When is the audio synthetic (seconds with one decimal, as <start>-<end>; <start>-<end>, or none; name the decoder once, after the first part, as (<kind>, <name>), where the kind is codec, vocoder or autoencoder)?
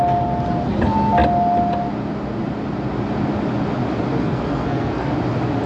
4.2-5.1 (codec, SNAC)